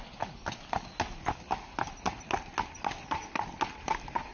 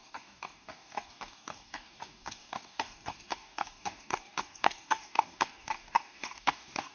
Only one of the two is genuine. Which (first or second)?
first